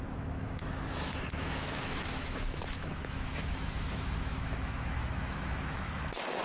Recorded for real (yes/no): no